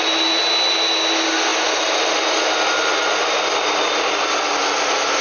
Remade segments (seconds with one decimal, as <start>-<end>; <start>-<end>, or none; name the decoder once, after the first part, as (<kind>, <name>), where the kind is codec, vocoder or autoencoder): none